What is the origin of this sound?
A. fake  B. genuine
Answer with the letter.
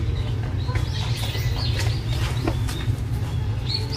B